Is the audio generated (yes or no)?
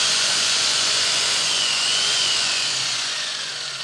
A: yes